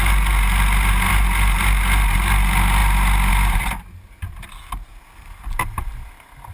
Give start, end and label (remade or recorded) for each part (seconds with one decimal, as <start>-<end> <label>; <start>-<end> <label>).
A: 0.0-4.9 recorded; 4.9-6.5 remade